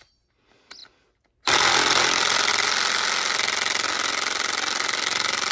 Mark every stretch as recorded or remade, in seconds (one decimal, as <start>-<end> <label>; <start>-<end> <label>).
0.0-5.5 recorded

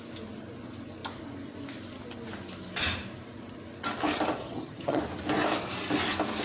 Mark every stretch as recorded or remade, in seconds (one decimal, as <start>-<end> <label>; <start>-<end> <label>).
0.0-4.4 recorded; 4.4-5.0 remade; 5.0-6.4 recorded

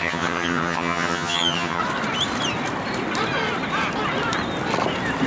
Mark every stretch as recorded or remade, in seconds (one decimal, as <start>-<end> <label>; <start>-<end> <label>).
0.0-1.8 remade; 1.8-5.3 recorded

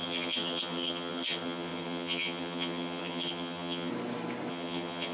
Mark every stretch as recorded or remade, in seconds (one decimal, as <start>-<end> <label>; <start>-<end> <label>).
0.0-3.9 remade; 3.9-4.5 recorded; 4.5-5.1 remade

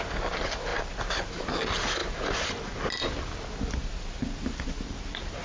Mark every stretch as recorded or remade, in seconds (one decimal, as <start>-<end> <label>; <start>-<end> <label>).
0.0-5.4 recorded

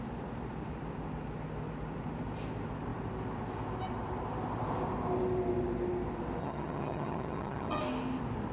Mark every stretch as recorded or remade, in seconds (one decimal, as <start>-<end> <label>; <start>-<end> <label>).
0.0-6.4 recorded; 6.4-7.8 remade; 7.8-8.5 recorded

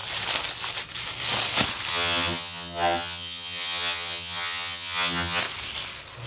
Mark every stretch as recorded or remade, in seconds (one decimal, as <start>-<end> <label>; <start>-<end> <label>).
0.0-1.9 recorded; 1.9-5.4 remade; 5.4-6.3 recorded